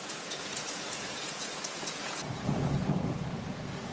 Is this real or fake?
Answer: fake